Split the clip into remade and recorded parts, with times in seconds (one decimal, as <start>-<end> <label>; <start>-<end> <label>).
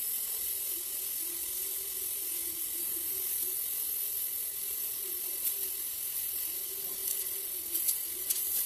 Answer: 0.0-8.7 recorded